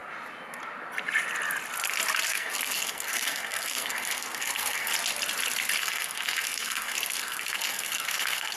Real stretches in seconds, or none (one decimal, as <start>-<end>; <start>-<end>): 0.0-2.3; 4.9-5.8